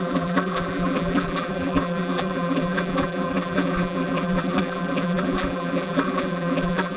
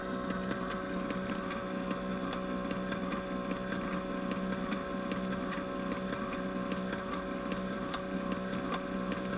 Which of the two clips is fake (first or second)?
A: first